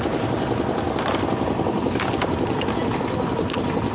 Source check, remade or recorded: recorded